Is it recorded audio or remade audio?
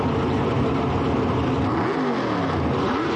recorded